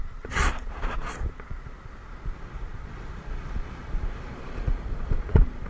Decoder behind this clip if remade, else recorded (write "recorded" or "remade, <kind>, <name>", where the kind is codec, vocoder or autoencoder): remade, vocoder, Vocos